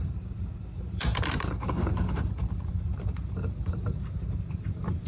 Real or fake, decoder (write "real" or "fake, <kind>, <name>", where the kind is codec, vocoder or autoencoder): fake, vocoder, BigVGAN v2